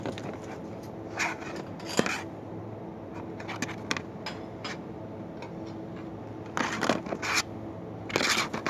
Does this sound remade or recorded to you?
recorded